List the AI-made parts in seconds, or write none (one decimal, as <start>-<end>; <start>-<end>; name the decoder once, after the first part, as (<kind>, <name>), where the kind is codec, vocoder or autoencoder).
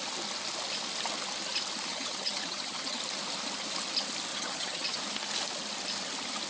1.9-3.0 (vocoder, HiFi-GAN); 4.3-5.0